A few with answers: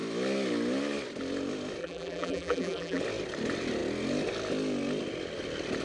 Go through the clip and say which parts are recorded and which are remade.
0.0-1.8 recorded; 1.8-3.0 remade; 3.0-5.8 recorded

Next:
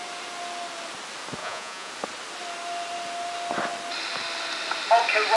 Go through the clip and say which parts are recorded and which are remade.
0.0-1.4 recorded; 1.4-1.9 remade; 1.9-5.4 recorded

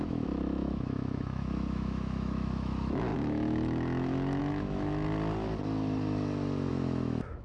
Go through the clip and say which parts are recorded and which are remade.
0.0-5.1 remade; 5.1-6.7 recorded; 6.7-7.4 remade

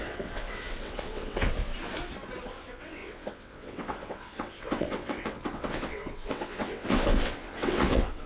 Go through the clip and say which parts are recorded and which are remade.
0.0-1.7 remade; 1.7-2.4 recorded; 2.4-8.3 remade

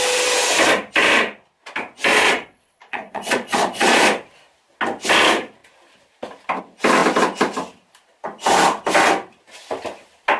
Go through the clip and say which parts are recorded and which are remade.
0.0-2.1 recorded; 2.1-4.0 remade; 4.0-10.4 recorded

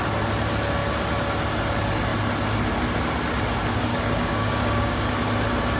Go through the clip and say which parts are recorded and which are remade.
0.0-3.9 recorded; 3.9-5.1 remade; 5.1-5.8 recorded